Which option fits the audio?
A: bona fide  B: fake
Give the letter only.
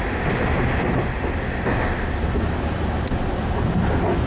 A